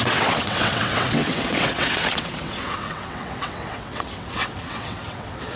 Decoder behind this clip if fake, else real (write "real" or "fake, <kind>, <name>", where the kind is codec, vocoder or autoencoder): fake, vocoder, WaveNeXt